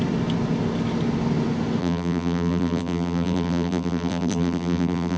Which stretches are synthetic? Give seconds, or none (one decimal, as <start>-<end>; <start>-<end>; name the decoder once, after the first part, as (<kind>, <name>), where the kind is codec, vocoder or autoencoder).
1.8-5.2 (vocoder, BigVGAN v2)